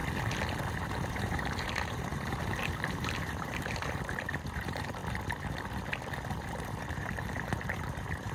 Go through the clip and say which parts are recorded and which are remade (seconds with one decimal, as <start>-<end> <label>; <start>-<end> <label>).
0.0-0.7 recorded; 0.7-5.0 remade; 5.0-6.8 recorded; 6.8-8.3 remade